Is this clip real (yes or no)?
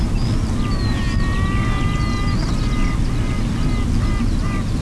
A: yes